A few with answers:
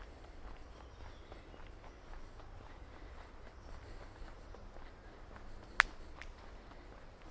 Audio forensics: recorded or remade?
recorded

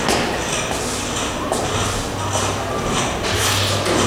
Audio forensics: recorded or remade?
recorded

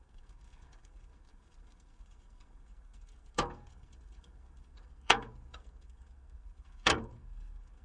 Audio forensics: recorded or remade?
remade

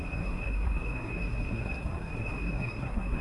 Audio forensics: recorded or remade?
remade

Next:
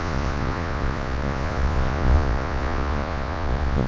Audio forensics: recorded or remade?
remade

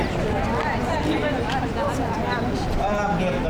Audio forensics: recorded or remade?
recorded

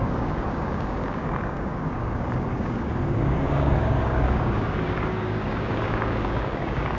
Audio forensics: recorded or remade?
remade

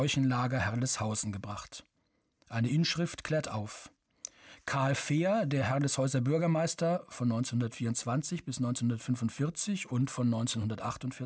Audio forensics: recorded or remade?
recorded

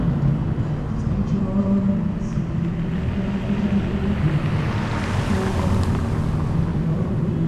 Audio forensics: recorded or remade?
recorded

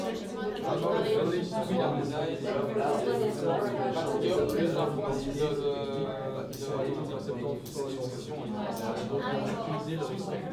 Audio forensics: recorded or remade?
recorded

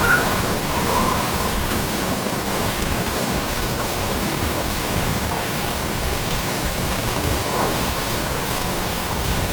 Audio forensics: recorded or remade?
remade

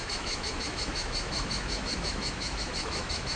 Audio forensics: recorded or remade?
remade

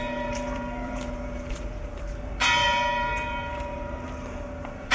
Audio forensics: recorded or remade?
remade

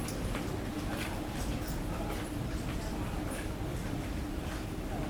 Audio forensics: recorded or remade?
recorded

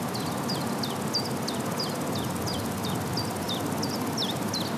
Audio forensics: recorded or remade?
recorded